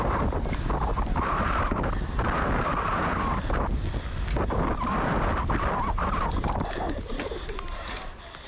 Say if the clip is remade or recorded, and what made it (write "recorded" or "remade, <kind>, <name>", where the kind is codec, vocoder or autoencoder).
recorded